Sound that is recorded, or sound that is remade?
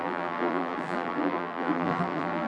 remade